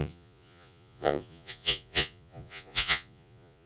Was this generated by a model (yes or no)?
yes